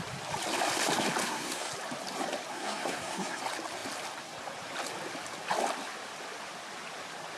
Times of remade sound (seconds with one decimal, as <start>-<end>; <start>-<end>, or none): 1.2-1.7; 2.5-3.4